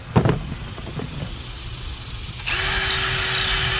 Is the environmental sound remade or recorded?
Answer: recorded